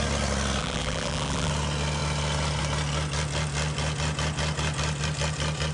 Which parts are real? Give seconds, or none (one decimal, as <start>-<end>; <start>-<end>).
0.0-0.6; 1.5-5.7